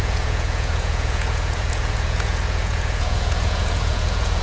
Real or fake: fake